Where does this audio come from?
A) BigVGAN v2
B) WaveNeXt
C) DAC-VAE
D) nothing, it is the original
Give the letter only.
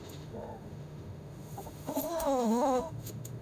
C